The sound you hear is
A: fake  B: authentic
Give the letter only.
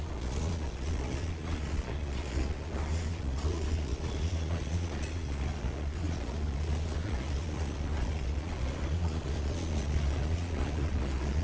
A